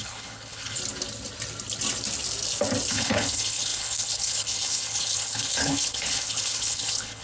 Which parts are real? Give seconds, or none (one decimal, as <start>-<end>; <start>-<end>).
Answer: 0.8-2.9